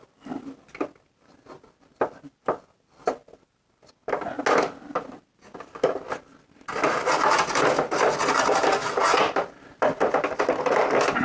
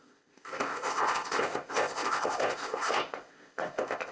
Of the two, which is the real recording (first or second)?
first